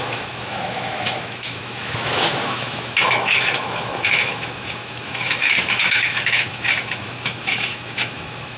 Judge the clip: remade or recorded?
remade